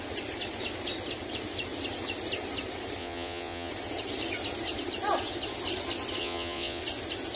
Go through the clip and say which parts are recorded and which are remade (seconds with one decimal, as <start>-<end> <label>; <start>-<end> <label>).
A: 0.0-3.0 recorded; 3.0-3.7 remade; 3.7-6.2 recorded; 6.2-6.8 remade; 6.8-7.4 recorded